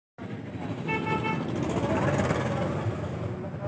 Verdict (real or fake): real